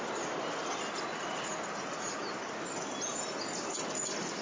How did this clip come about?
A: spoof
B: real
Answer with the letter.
B